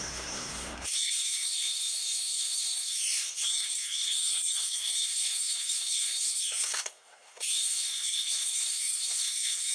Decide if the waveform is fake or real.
fake